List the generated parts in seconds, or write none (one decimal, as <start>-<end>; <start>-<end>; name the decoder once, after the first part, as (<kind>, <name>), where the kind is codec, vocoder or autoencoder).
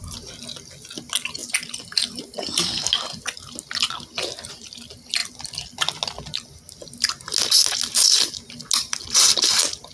none